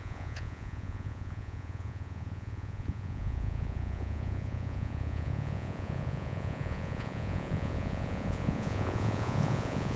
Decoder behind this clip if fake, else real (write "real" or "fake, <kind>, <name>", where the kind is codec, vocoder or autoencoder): fake, vocoder, Vocos